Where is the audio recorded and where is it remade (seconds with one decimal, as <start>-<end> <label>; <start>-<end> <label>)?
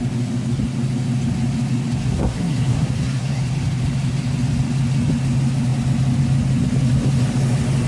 0.0-2.0 recorded; 2.0-3.4 remade; 3.4-7.9 recorded